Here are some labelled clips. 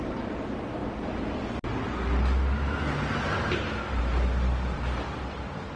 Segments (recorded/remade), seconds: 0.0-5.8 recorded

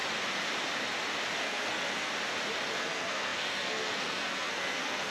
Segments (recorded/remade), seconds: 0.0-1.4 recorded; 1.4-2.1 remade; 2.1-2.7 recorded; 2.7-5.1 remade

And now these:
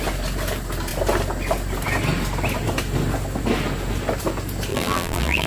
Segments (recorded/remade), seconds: 0.0-4.7 recorded; 4.7-5.5 remade

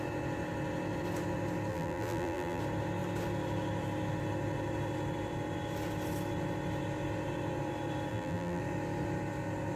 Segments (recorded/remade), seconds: 0.0-1.7 recorded; 1.7-2.6 remade; 2.6-8.1 recorded; 8.1-8.6 remade; 8.6-9.8 recorded

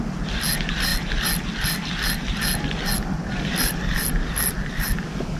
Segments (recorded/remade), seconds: 0.0-5.4 recorded

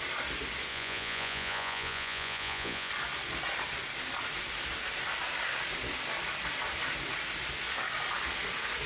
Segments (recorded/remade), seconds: 0.0-0.7 recorded; 0.7-2.9 remade; 2.9-8.9 recorded

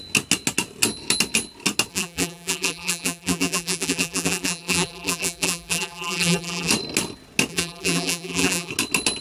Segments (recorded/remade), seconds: 0.0-1.9 recorded; 1.9-6.7 remade; 6.7-7.5 recorded; 7.5-8.7 remade; 8.7-9.2 recorded